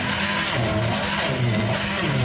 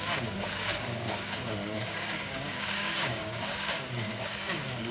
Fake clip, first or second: second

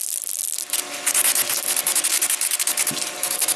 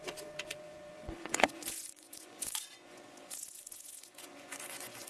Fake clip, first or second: second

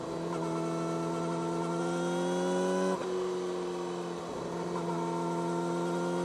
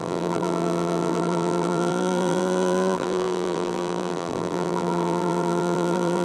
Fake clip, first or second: second